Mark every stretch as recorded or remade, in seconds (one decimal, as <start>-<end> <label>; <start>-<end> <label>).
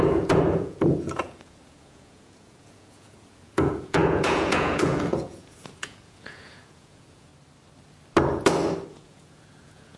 0.0-7.3 remade; 7.3-8.9 recorded; 8.9-10.0 remade